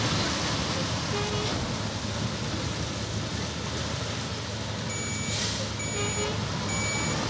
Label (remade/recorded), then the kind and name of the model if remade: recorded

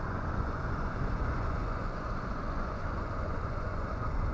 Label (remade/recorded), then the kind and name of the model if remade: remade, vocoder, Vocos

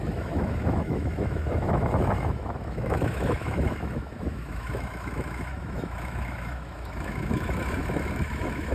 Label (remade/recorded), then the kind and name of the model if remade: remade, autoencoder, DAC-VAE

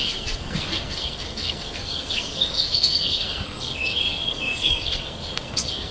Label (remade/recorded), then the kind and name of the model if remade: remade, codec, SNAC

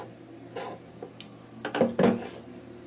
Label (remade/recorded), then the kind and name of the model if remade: recorded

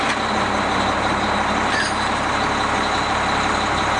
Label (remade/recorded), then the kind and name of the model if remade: recorded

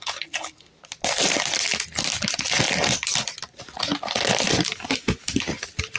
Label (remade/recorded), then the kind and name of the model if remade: recorded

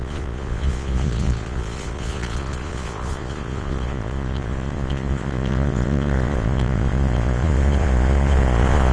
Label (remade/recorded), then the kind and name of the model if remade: remade, vocoder, Vocos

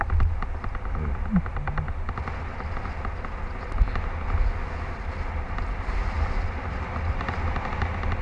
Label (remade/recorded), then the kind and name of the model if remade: recorded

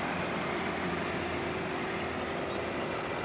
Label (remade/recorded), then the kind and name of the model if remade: recorded